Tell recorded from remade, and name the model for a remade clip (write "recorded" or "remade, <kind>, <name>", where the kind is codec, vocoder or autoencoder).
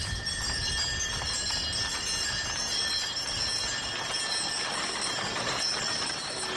recorded